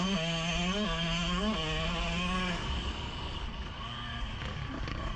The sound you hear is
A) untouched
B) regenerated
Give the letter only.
B